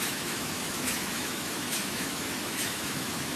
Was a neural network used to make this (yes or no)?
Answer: yes